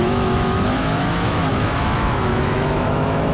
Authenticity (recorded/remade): remade